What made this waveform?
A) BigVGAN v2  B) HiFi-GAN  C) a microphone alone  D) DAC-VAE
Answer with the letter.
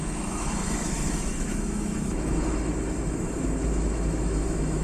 D